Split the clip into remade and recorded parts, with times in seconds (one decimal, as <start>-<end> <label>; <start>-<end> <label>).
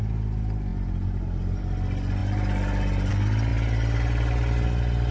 0.0-5.1 recorded